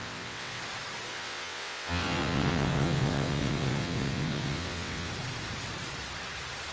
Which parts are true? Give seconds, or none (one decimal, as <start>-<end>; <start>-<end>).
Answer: 0.6-1.1; 5.1-6.7